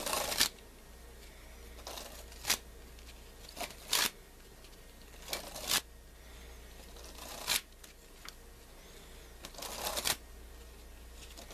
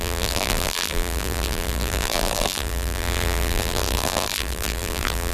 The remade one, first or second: second